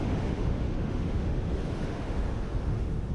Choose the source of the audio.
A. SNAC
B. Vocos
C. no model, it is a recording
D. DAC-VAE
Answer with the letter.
D